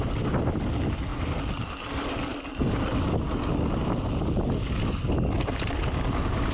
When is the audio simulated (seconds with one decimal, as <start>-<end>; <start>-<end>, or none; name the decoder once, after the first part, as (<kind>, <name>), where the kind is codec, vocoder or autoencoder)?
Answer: none